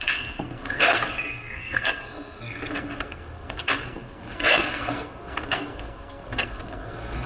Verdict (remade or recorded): remade